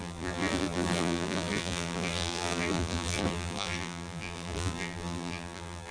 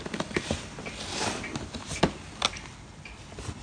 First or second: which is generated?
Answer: first